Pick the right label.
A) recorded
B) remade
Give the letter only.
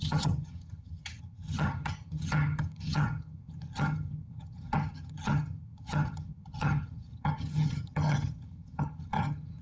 B